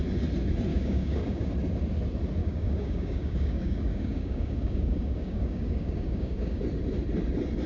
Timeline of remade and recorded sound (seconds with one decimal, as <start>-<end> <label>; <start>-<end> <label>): 0.0-0.7 recorded; 0.7-1.5 remade; 1.5-2.4 recorded; 2.4-6.6 remade; 6.6-7.7 recorded